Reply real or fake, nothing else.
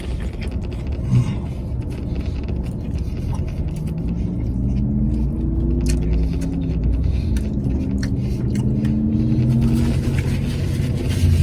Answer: real